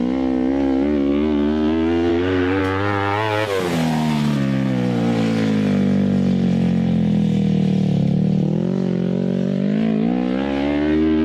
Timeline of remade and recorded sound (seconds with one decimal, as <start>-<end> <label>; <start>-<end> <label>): 0.0-2.1 recorded; 2.1-2.6 remade; 2.6-11.2 recorded